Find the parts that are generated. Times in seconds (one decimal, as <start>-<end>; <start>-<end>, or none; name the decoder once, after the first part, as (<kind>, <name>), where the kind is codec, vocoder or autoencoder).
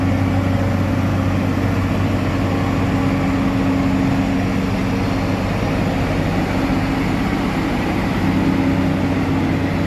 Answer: none